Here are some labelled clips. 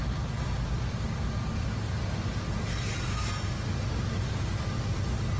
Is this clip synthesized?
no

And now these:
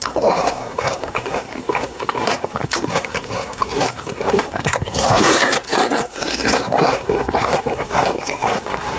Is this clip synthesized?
yes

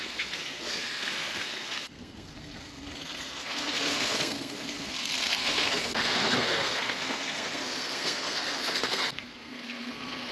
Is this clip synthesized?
yes